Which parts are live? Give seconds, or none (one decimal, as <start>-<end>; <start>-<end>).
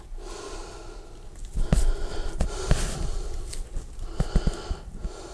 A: 0.0-5.3